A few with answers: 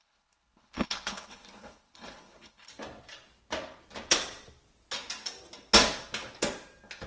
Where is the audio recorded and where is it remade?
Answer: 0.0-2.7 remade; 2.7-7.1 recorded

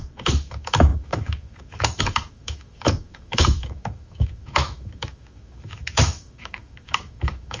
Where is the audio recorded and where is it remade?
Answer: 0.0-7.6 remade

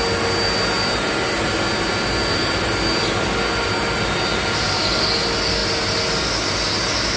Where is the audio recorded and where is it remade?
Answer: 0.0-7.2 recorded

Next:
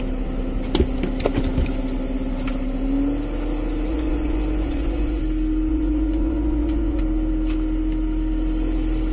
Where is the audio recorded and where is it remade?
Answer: 0.0-3.9 recorded; 3.9-5.2 remade; 5.2-5.7 recorded; 5.7-7.0 remade; 7.0-9.1 recorded

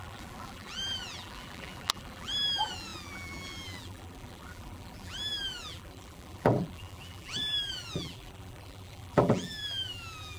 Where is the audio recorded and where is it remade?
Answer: 0.0-10.4 remade

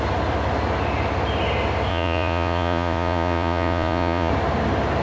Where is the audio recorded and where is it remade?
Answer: 0.0-1.9 recorded; 1.9-4.3 remade; 4.3-5.0 recorded